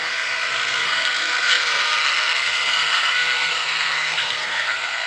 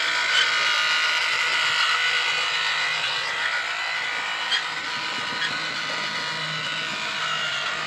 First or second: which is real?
second